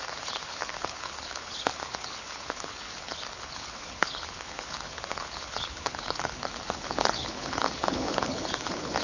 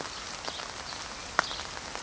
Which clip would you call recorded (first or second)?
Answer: second